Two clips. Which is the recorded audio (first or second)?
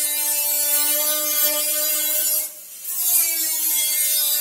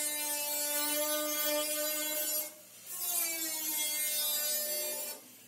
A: second